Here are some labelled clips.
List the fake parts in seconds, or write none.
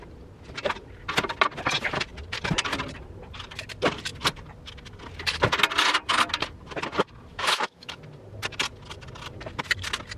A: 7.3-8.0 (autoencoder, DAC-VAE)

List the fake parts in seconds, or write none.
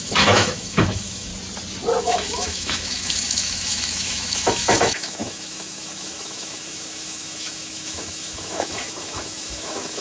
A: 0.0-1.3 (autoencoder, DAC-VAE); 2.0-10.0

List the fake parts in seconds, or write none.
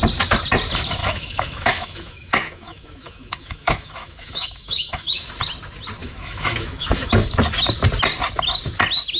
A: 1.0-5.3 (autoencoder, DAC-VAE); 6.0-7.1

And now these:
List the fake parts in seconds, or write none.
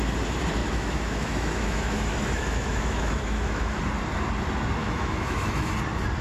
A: 0.6-3.8 (autoencoder, DAC-VAE); 4.8-5.7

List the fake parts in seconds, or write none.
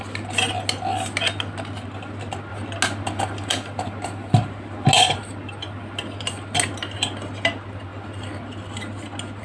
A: none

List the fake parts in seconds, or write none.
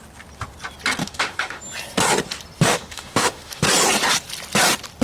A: 1.0-1.6 (autoencoder, DAC-VAE); 2.7-3.6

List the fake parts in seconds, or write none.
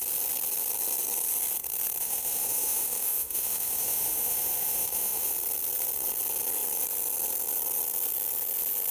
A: 2.0-5.3 (autoencoder, DAC-VAE)